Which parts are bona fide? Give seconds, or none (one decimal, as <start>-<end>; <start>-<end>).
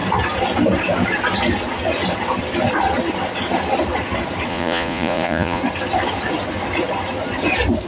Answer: 0.0-4.5; 5.6-7.9